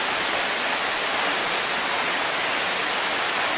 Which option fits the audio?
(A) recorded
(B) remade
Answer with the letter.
A